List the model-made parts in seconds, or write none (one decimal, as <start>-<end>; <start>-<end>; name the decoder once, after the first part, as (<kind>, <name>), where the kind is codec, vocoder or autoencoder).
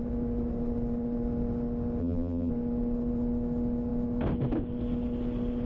2.0-2.5 (vocoder, BigVGAN v2)